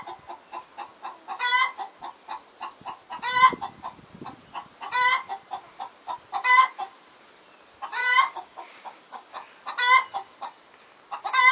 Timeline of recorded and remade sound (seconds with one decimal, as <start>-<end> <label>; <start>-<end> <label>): 0.0-8.0 recorded; 8.0-9.3 remade; 9.3-11.5 recorded